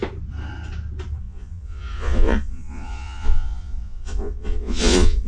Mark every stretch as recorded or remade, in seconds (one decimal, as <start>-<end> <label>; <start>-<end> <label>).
0.0-1.2 recorded; 1.2-5.3 remade